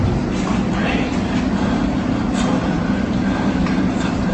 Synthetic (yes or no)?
no